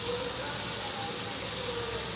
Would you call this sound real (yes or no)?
yes